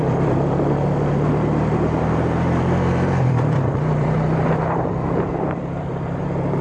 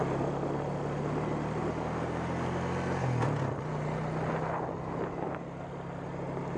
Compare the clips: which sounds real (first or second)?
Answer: second